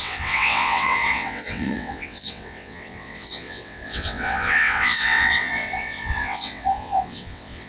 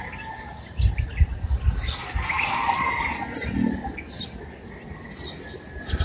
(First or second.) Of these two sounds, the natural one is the second